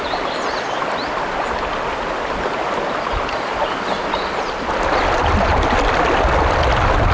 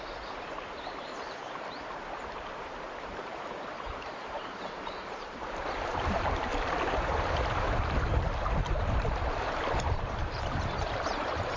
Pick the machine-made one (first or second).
second